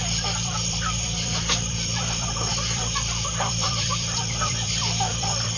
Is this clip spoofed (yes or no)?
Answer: yes